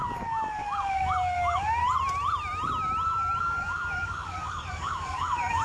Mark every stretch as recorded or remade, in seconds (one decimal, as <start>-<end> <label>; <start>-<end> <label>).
0.0-1.8 remade; 1.8-3.4 recorded; 3.4-5.6 remade